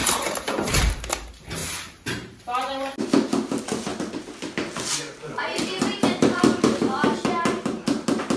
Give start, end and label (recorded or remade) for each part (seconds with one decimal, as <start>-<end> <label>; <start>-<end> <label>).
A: 0.0-1.0 remade; 1.0-1.6 recorded; 1.6-2.4 remade; 2.4-8.4 recorded